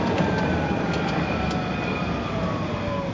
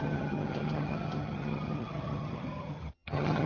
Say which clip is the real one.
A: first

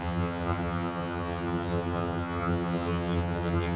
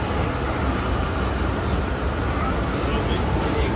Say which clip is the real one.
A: second